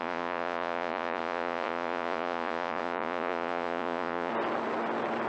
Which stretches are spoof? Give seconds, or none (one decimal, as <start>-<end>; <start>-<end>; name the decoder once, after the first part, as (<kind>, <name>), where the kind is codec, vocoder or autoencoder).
0.0-4.3 (vocoder, Vocos)